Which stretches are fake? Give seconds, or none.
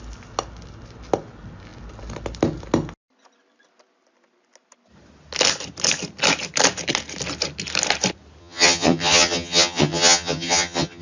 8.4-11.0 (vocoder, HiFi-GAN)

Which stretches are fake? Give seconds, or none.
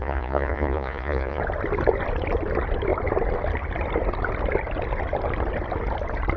0.0-1.4 (vocoder, Vocos)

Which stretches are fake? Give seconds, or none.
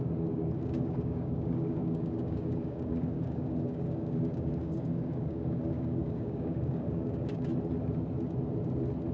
0.0-7.5 (codec, DAC)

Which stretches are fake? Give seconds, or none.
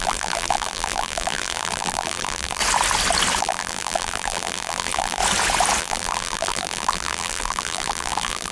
0.0-2.6 (vocoder, BigVGAN v2); 3.4-5.2; 5.8-8.5